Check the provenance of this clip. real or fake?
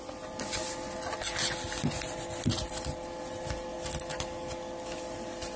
real